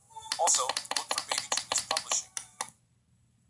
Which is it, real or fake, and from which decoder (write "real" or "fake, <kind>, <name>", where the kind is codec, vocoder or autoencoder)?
real